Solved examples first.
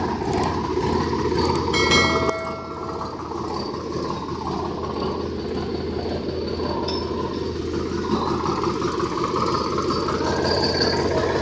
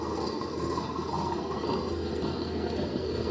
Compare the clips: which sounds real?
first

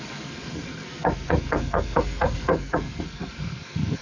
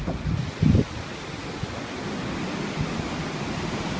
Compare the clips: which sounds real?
second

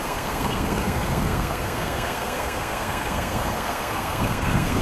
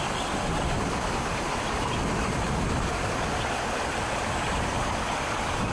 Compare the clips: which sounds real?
second